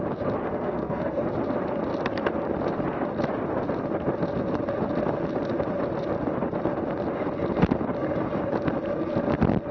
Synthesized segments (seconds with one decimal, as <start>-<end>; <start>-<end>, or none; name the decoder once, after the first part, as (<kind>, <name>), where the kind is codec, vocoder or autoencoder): 0.5-1.2 (codec, SNAC)